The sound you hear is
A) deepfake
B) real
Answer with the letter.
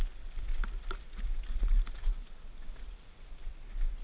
B